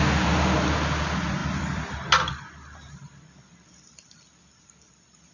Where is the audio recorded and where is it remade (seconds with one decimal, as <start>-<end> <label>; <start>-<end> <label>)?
0.0-1.4 recorded; 1.4-4.6 remade; 4.6-5.3 recorded